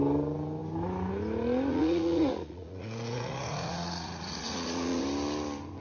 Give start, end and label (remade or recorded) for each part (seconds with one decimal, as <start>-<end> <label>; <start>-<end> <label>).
0.0-1.7 recorded; 1.7-5.0 remade; 5.0-5.8 recorded